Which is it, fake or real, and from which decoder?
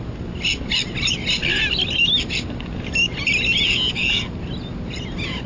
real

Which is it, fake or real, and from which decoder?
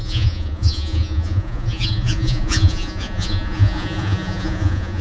fake, vocoder, Vocos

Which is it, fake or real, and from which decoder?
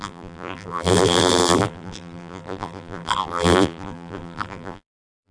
fake, vocoder, BigVGAN v2